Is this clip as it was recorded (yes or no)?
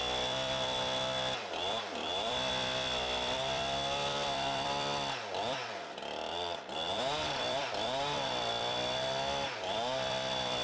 no